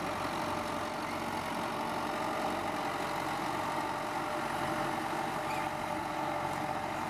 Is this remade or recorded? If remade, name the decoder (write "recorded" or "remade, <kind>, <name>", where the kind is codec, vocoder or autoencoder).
recorded